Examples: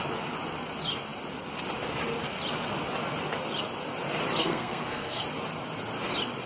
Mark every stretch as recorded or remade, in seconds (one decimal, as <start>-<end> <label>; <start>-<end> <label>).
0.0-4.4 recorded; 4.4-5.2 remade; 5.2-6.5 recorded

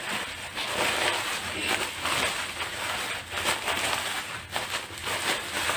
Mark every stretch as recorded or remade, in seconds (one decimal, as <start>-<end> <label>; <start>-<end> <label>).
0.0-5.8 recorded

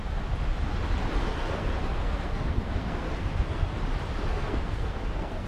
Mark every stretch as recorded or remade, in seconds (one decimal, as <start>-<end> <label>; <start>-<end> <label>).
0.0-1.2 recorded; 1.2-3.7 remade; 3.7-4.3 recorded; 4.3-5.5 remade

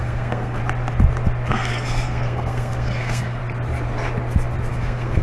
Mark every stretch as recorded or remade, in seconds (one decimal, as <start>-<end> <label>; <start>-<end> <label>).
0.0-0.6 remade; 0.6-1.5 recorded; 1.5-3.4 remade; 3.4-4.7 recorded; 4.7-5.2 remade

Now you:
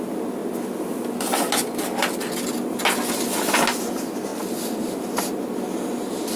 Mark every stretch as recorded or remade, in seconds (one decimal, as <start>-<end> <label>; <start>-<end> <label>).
0.0-6.4 recorded

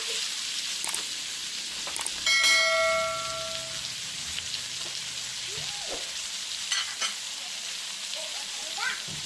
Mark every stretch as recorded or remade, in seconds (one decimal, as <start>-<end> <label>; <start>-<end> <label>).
0.0-9.3 recorded

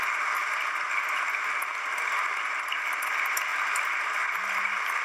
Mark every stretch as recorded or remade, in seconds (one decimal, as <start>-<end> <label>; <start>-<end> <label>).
0.0-5.0 recorded